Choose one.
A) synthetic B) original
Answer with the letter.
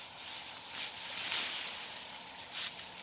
B